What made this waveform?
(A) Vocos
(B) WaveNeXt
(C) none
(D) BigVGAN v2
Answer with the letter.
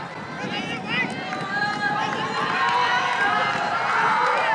C